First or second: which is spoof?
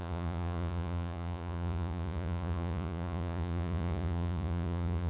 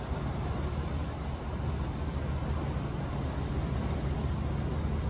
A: first